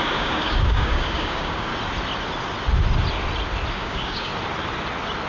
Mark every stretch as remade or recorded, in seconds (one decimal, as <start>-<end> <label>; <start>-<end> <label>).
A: 0.0-1.7 remade; 1.7-3.7 recorded; 3.7-4.3 remade; 4.3-5.3 recorded